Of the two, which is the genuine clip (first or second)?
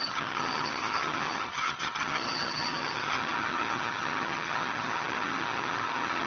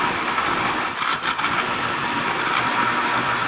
second